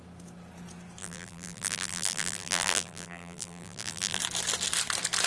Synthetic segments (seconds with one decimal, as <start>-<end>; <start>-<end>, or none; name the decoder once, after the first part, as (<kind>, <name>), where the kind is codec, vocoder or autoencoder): 1.0-4.2 (vocoder, BigVGAN v2)